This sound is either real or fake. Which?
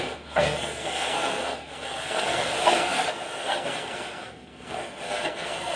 fake